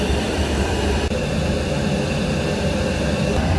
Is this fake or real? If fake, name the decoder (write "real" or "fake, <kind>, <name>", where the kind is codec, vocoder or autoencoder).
real